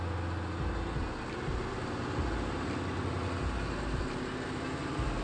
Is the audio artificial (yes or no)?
no